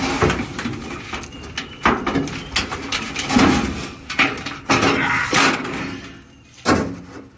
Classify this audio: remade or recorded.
recorded